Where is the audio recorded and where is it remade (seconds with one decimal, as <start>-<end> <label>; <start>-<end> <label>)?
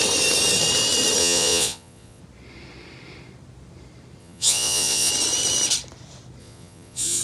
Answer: 0.0-1.2 recorded; 1.2-2.2 remade; 2.2-4.2 recorded; 4.2-5.1 remade; 5.1-6.4 recorded; 6.4-7.2 remade